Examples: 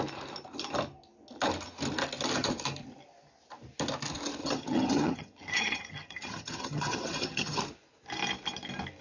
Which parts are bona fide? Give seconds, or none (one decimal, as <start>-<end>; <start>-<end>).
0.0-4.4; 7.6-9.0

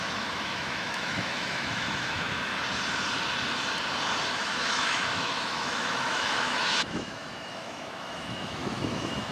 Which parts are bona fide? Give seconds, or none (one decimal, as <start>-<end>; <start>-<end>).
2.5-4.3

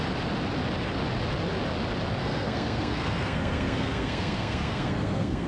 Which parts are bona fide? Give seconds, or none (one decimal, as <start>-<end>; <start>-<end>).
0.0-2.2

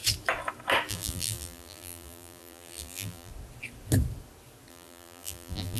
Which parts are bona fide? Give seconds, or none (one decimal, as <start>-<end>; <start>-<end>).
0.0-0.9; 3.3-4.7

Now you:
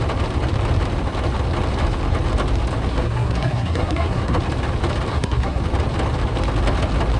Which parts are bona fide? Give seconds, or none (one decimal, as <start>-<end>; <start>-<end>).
0.0-2.9; 4.4-5.1; 5.6-7.2

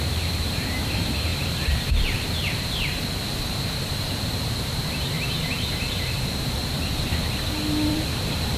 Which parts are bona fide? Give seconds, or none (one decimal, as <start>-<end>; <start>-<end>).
7.1-7.9